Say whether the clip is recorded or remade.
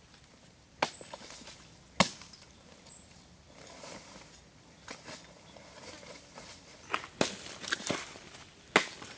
recorded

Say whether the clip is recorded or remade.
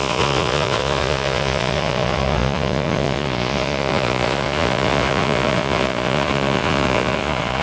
remade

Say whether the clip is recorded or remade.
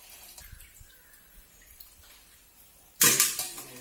remade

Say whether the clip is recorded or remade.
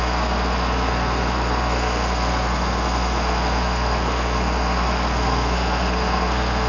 remade